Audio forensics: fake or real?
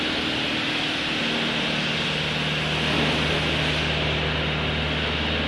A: real